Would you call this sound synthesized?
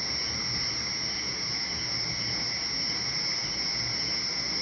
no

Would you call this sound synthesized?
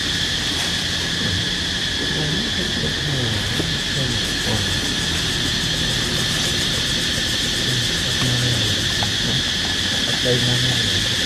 no